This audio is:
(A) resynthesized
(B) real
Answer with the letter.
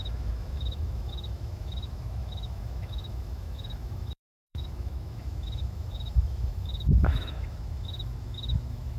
A